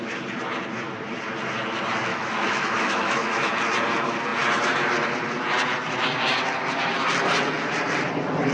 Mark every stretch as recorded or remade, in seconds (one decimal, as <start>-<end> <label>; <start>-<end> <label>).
0.0-2.1 recorded; 2.1-3.5 remade; 3.5-8.5 recorded